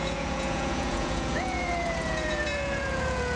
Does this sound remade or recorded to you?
remade